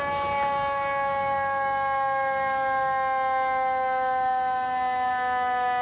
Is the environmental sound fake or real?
real